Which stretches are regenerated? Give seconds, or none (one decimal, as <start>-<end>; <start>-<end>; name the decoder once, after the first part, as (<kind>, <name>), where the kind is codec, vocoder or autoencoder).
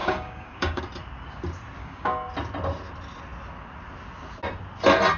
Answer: 0.0-0.8 (codec, DAC); 1.8-2.3